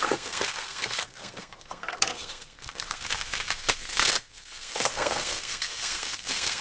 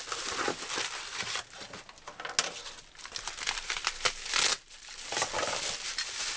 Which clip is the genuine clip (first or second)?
second